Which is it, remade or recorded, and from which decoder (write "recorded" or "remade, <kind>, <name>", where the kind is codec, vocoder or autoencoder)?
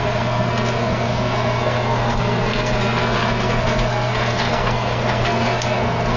remade, codec, SNAC